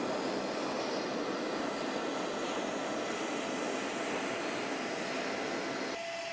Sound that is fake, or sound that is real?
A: real